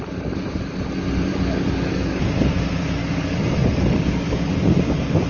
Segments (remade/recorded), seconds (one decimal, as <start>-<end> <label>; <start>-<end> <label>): 0.0-1.3 recorded; 1.3-2.2 remade; 2.2-3.0 recorded; 3.0-4.5 remade; 4.5-5.3 recorded